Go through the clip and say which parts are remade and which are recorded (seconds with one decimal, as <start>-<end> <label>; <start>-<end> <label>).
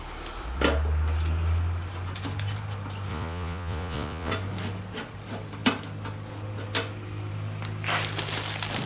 0.0-3.1 recorded; 3.1-4.3 remade; 4.3-8.9 recorded